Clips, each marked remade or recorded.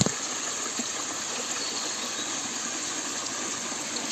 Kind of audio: remade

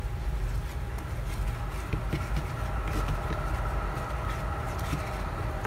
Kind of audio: recorded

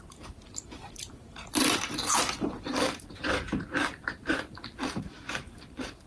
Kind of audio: remade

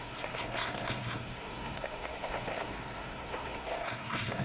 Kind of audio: remade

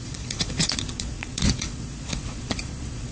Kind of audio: remade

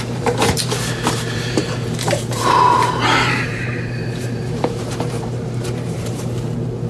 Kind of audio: remade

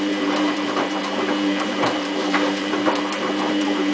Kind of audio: remade